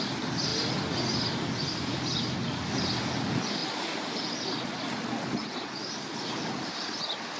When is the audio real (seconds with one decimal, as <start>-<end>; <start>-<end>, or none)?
0.0-7.4